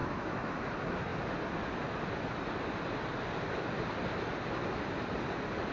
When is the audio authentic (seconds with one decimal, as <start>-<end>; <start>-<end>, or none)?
0.7-5.7